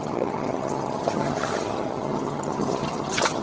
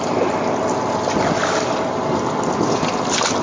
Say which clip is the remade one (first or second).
first